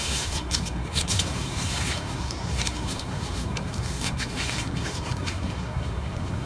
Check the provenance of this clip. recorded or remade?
remade